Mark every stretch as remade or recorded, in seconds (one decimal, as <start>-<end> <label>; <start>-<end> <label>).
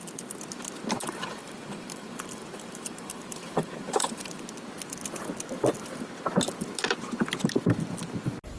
0.0-1.0 recorded; 1.0-4.4 remade; 4.4-8.6 recorded